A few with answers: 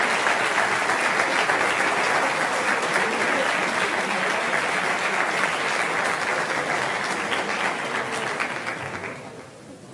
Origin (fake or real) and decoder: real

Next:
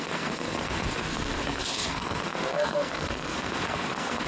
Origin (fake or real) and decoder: fake, codec, SNAC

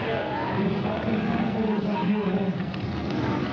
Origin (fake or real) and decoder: fake, codec, SNAC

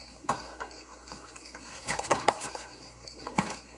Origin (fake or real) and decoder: fake, codec, SNAC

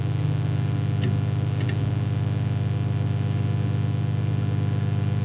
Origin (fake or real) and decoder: real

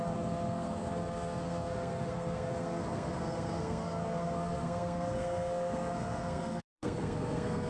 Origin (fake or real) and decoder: fake, codec, SNAC